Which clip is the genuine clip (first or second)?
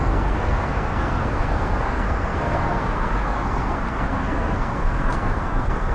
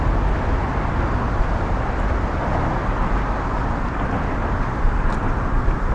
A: second